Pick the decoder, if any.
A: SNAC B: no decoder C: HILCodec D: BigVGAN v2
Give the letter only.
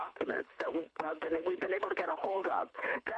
C